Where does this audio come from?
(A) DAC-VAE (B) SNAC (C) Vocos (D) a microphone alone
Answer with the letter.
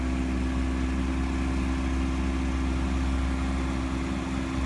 D